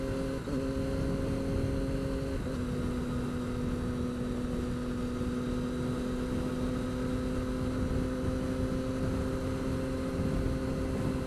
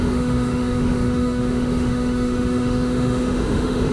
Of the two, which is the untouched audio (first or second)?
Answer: first